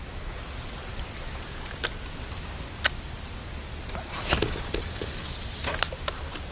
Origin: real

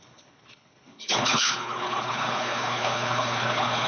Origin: fake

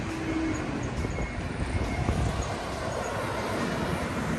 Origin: real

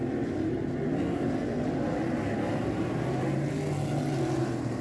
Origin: real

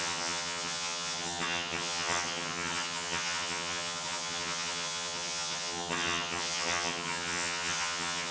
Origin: fake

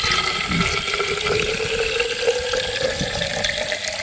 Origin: real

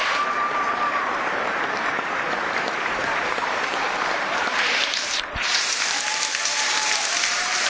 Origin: fake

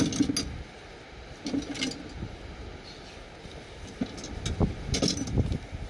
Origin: real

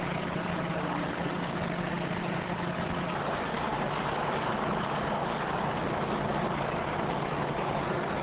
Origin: real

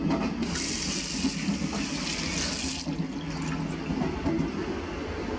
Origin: real